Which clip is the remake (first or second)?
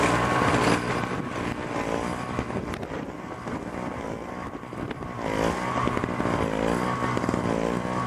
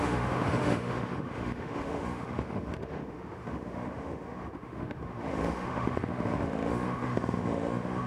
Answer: second